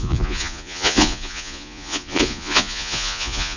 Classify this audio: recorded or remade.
remade